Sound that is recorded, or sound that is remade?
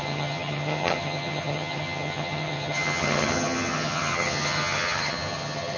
remade